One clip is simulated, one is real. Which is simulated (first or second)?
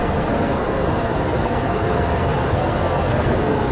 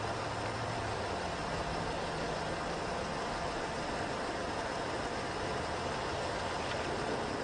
first